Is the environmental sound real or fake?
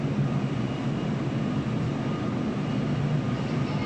real